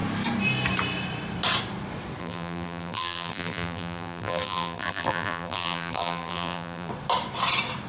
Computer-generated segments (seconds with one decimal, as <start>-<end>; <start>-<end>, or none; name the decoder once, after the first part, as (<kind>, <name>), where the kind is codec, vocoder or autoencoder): 2.2-6.9 (vocoder, BigVGAN v2)